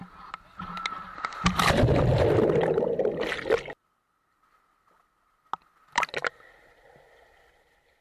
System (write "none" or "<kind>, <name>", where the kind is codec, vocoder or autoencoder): none